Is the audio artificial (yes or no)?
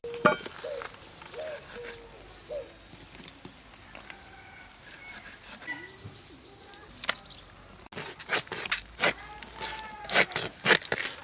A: no